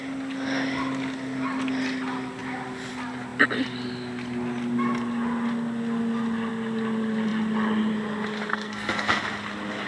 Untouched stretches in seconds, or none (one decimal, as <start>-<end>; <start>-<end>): 0.0-8.5; 9.2-9.9